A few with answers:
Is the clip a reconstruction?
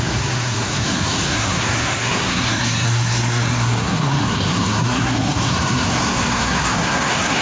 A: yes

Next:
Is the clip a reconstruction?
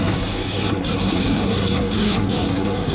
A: yes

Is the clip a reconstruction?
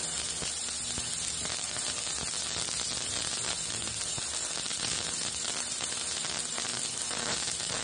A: no